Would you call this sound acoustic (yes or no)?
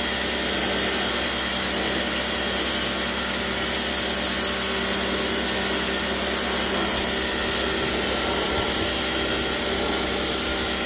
yes